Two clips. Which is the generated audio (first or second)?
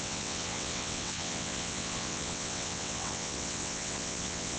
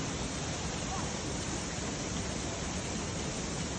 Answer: first